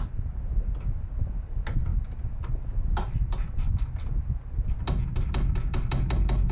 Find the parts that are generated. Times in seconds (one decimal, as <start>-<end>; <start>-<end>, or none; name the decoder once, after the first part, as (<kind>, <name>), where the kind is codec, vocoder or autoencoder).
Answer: none